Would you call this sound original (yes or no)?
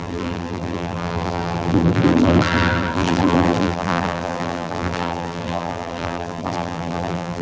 no